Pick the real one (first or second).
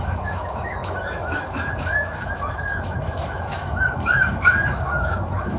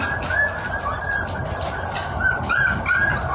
second